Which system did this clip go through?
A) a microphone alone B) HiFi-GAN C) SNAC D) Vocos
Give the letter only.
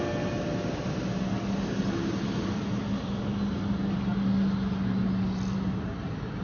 A